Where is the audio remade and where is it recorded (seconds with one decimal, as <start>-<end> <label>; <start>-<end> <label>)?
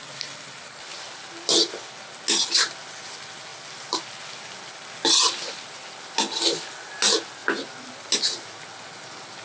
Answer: 0.0-9.4 recorded